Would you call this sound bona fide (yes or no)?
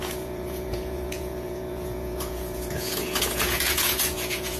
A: no